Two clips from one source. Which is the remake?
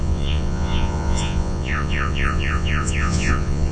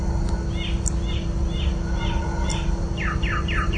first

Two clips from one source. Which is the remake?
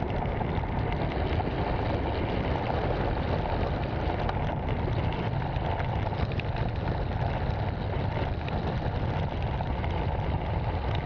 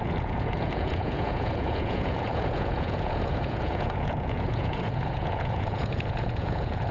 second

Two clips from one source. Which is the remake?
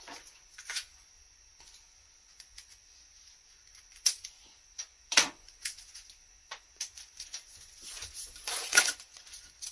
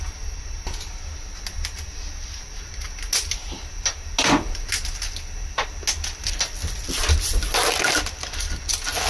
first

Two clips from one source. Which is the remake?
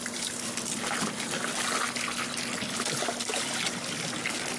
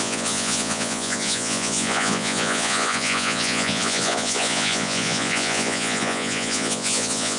second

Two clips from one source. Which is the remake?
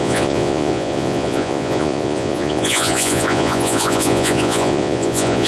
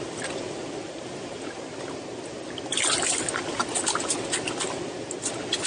first